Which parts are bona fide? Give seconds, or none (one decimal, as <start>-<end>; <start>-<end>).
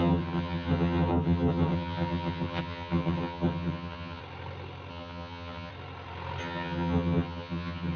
4.2-4.9; 5.7-6.4